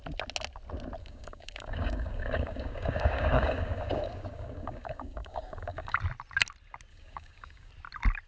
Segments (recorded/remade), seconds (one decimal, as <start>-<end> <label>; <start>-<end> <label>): 0.0-1.0 recorded; 1.0-6.0 remade; 6.0-6.9 recorded; 6.9-7.7 remade; 7.7-8.3 recorded